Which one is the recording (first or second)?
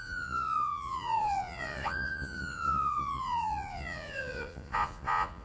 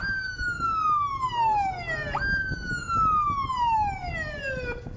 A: second